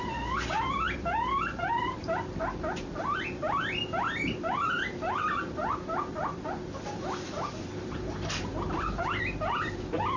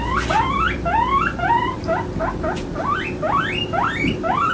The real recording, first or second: second